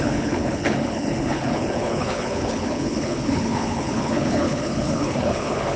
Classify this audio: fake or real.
fake